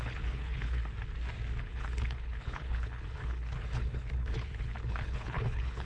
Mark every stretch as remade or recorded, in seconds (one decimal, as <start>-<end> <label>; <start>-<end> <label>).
0.0-0.8 remade; 0.8-1.6 recorded; 1.6-5.8 remade